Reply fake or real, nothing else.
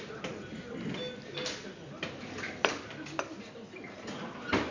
real